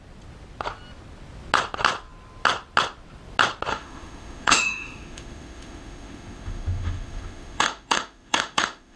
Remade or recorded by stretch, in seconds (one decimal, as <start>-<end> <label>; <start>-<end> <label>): 0.0-3.7 recorded; 3.7-9.0 remade